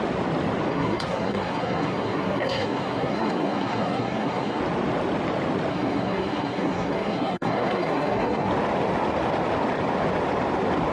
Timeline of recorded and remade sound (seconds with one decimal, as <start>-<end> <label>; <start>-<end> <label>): 0.0-0.7 recorded; 0.7-4.6 remade; 4.6-5.7 recorded; 5.7-8.5 remade; 8.5-10.9 recorded

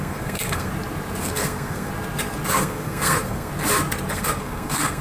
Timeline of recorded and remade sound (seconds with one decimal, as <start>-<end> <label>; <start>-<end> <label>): 0.0-0.7 remade; 0.7-1.2 recorded; 1.2-1.9 remade; 1.9-2.5 recorded; 2.5-3.5 remade; 3.5-4.1 recorded; 4.1-5.0 remade

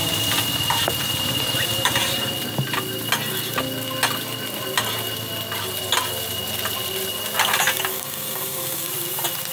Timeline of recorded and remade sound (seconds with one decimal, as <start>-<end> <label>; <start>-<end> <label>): 0.0-7.9 recorded; 7.9-8.9 remade; 8.9-9.5 recorded

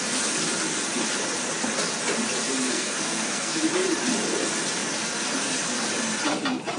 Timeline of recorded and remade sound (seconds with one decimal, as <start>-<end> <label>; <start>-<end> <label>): 0.0-2.6 recorded; 2.6-3.6 remade; 3.6-6.8 recorded